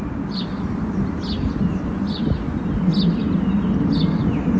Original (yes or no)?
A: yes